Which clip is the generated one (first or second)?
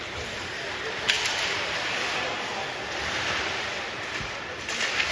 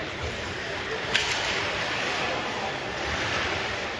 second